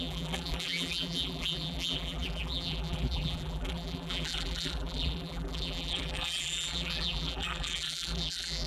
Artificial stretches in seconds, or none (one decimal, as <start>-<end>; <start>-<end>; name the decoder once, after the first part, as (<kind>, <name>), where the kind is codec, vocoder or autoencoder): 0.0-8.7 (vocoder, BigVGAN v2)